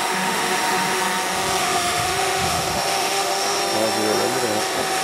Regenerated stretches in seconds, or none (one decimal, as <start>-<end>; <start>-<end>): 0.0-1.0; 1.6-3.6; 4.6-5.0